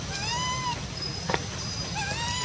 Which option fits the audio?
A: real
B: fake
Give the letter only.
A